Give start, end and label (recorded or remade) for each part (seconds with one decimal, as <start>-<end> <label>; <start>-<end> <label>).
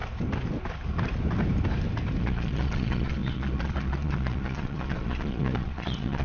0.0-2.2 recorded; 2.2-6.2 remade